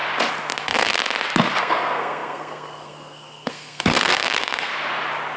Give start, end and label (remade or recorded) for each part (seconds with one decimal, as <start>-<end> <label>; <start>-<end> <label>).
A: 0.0-0.6 recorded; 0.6-1.0 remade; 1.0-1.6 recorded; 1.6-4.7 remade; 4.7-5.4 recorded